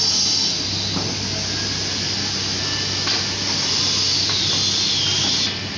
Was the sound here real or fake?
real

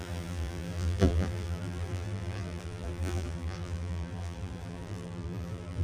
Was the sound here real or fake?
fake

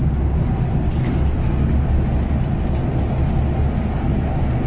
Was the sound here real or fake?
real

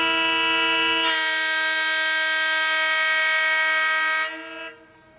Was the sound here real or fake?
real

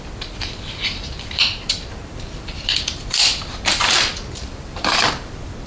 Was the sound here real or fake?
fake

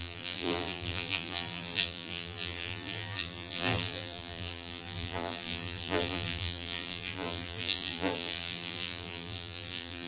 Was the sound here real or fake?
fake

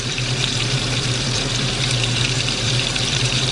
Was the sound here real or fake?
fake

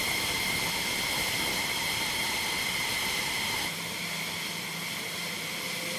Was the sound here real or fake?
fake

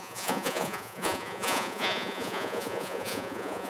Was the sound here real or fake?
fake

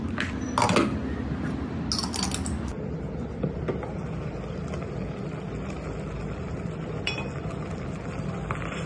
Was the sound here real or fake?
real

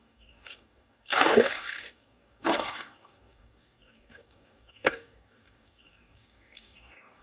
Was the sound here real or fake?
fake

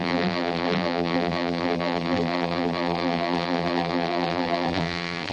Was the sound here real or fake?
fake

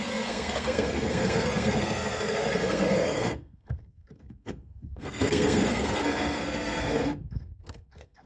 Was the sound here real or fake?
fake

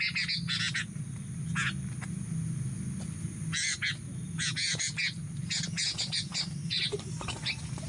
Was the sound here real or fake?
real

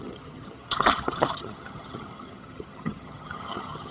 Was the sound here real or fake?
fake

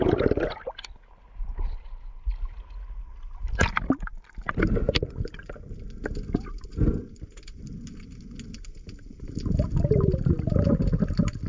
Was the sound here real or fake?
real